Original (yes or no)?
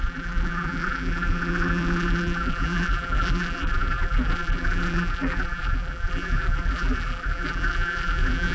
no